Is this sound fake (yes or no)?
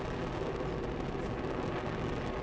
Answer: no